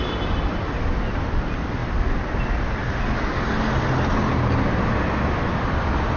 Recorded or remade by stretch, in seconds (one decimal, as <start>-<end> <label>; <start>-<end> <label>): 0.0-6.2 recorded